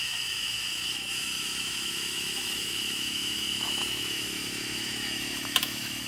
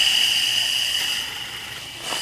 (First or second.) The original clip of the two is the second